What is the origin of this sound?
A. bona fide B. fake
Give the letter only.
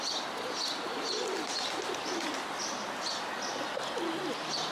A